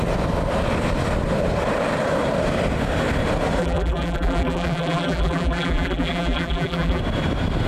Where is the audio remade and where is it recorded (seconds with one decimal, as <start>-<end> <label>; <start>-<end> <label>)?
0.0-3.6 recorded; 3.6-7.0 remade; 7.0-7.7 recorded